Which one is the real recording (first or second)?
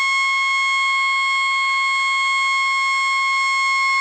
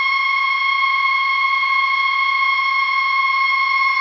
first